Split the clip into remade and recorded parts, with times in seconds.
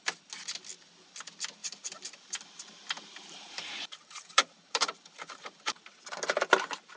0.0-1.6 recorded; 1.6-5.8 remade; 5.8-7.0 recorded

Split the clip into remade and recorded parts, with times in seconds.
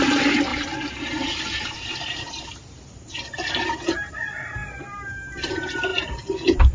0.0-0.5 recorded; 0.5-4.1 remade; 4.1-5.9 recorded; 5.9-6.7 remade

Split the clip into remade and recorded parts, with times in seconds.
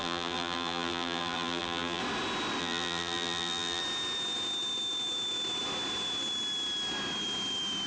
0.0-2.0 remade; 2.0-2.6 recorded; 2.6-3.8 remade; 3.8-7.9 recorded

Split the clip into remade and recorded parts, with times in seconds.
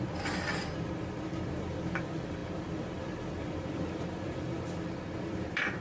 0.0-5.8 remade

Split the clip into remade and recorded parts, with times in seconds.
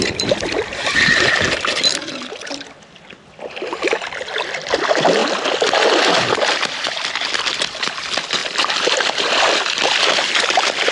0.0-5.2 remade; 5.2-6.1 recorded; 6.1-8.4 remade; 8.4-9.3 recorded; 9.3-10.9 remade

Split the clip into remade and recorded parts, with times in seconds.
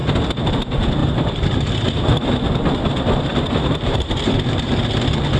0.0-1.0 recorded; 1.0-2.3 remade; 2.3-3.3 recorded; 3.3-4.3 remade; 4.3-5.4 recorded